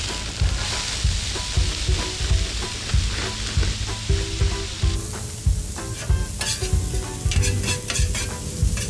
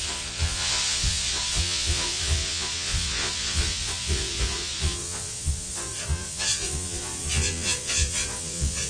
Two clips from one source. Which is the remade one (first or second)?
second